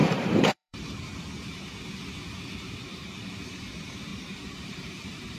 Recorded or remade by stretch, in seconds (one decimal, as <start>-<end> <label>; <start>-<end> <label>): 0.0-1.1 remade; 1.1-2.9 recorded; 2.9-3.6 remade; 3.6-4.1 recorded; 4.1-5.4 remade